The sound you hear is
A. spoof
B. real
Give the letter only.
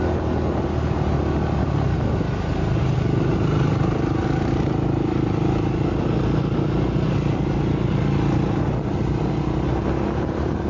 B